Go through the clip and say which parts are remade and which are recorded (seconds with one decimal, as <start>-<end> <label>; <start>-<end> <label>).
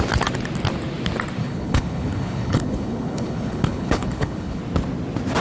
0.0-1.4 recorded; 1.4-4.6 remade; 4.6-5.4 recorded